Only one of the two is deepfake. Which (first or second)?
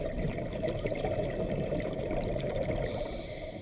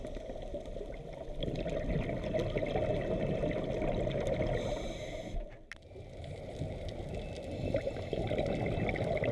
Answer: first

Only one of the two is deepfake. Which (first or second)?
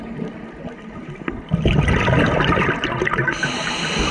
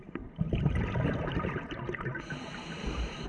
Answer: second